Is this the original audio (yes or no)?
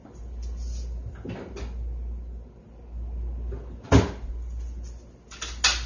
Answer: yes